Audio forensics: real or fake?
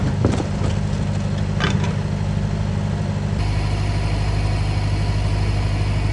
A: real